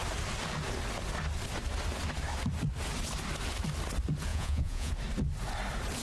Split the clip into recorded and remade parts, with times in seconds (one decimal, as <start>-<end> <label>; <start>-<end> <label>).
0.0-4.3 recorded; 4.3-4.9 remade; 4.9-6.0 recorded